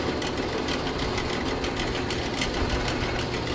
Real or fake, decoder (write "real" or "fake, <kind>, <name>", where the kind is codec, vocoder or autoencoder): real